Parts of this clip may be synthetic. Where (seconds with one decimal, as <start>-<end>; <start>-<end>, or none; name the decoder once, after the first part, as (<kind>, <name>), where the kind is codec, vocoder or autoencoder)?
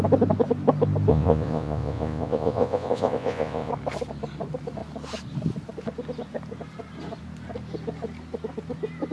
1.1-3.7 (vocoder, Vocos)